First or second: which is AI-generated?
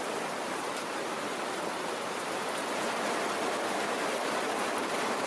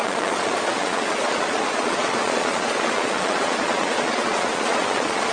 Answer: second